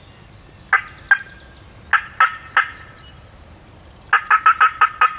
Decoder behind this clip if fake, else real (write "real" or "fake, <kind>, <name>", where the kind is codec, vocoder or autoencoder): real